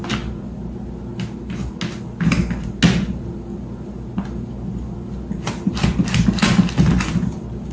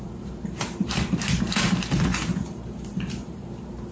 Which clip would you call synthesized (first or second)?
second